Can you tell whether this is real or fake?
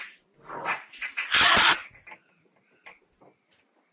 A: real